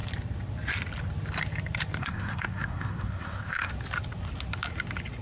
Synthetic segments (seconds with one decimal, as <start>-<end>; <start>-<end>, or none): 2.0-3.7